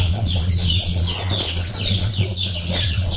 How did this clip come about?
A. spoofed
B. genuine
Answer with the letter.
A